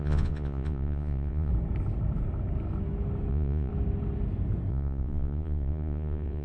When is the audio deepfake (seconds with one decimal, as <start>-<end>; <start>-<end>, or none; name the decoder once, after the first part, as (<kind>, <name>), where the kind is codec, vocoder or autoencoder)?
0.0-1.5 (vocoder, Vocos); 3.3-3.7; 4.7-6.4